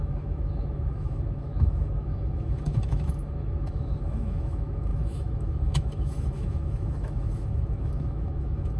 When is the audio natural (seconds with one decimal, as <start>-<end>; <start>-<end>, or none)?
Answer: none